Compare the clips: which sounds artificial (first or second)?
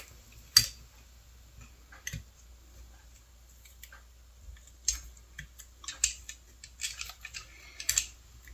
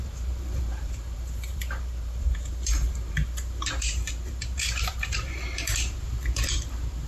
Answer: second